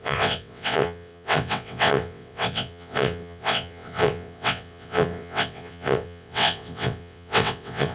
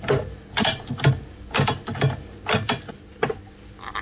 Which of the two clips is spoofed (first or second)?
first